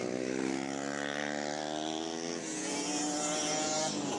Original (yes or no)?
yes